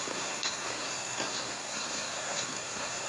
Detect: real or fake fake